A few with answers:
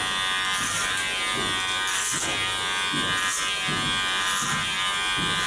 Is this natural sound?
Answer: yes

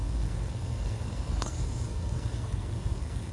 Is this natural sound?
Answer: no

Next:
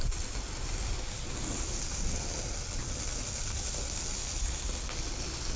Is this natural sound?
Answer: yes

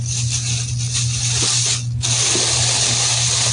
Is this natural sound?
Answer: yes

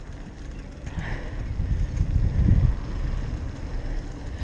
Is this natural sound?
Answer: yes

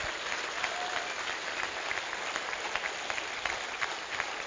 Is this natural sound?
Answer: yes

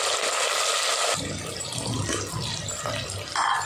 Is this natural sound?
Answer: yes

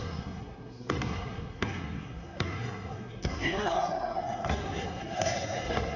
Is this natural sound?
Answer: no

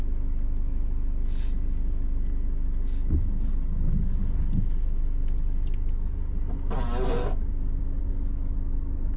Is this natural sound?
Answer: yes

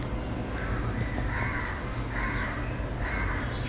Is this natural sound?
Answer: yes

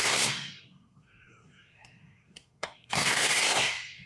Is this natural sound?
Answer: no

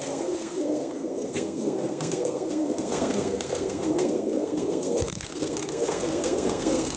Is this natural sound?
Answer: no